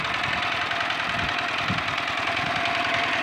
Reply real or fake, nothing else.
real